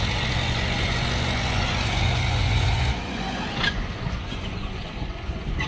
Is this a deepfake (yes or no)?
yes